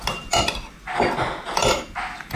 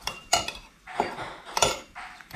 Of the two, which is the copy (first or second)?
second